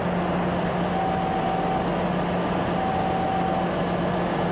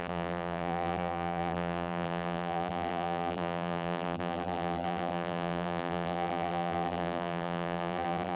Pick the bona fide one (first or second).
first